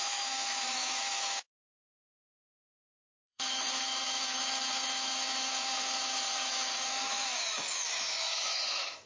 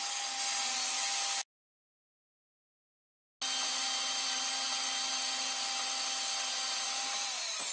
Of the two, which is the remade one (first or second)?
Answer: first